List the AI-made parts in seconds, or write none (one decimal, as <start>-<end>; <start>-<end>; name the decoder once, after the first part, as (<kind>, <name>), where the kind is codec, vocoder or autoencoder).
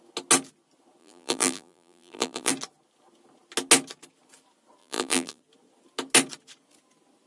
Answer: 1.0-2.5 (vocoder, BigVGAN v2); 4.8-5.4